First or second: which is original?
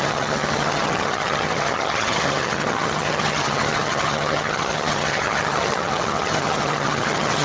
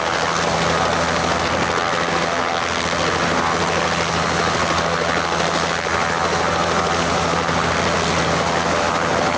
second